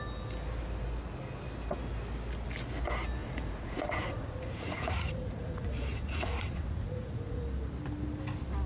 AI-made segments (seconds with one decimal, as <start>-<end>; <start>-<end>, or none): 3.2-7.4